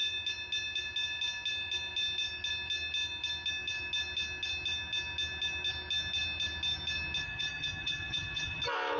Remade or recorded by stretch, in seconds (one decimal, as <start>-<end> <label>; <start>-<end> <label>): 0.0-7.2 recorded; 7.2-8.6 remade; 8.6-9.0 recorded